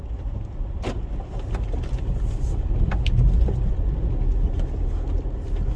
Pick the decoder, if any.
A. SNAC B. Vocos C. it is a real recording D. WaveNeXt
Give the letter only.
C